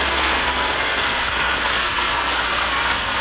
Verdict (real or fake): fake